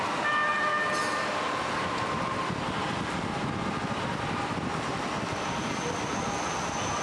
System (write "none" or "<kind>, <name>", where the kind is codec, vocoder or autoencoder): none